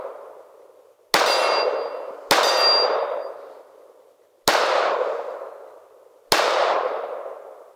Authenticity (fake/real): real